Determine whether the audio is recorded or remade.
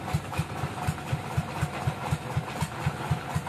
recorded